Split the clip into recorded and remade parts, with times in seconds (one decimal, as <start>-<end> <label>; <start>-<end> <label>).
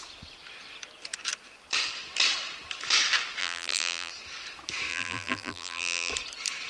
0.0-3.4 recorded; 3.4-4.1 remade; 4.1-4.9 recorded; 4.9-6.1 remade; 6.1-6.7 recorded